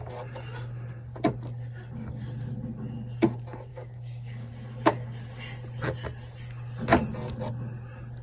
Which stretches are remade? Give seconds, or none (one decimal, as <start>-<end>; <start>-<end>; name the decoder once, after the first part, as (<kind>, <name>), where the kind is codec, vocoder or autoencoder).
3.7-4.5 (codec, DAC)